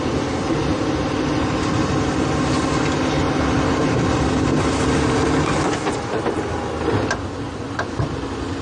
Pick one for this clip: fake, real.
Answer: real